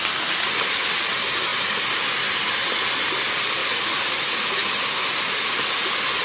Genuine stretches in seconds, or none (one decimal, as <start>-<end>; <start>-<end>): 0.0-6.2